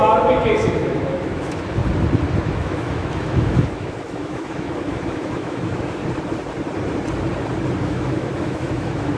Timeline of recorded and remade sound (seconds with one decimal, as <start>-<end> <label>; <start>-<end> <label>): 0.0-1.8 remade; 1.8-2.5 recorded; 2.5-6.0 remade; 6.0-7.8 recorded; 7.8-9.2 remade